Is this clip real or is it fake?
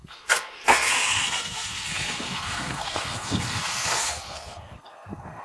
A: fake